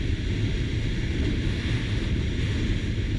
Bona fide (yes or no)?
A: yes